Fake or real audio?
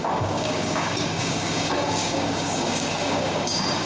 fake